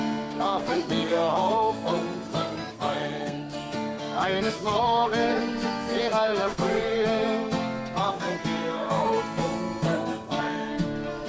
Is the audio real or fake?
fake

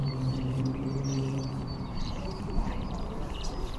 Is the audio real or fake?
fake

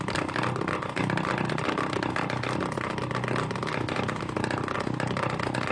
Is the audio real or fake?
real